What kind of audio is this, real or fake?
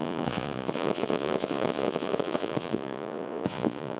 fake